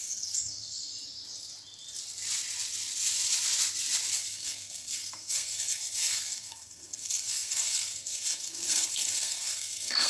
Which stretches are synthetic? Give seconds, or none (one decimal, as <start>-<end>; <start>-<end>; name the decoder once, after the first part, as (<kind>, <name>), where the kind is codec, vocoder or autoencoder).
0.0-0.9 (codec, SNAC); 4.1-10.1